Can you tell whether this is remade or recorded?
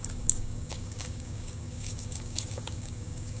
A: remade